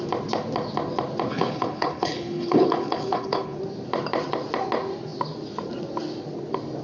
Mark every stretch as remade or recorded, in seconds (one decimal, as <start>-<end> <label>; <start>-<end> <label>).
0.0-1.3 recorded; 1.3-3.6 remade; 3.6-6.8 recorded